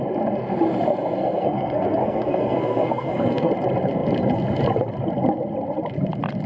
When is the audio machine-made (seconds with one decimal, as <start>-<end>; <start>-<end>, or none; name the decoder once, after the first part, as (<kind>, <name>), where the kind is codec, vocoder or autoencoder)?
1.2-3.5 (codec, SNAC)